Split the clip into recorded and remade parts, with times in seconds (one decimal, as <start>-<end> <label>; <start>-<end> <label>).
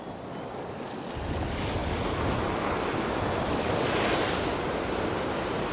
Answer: 0.0-5.7 recorded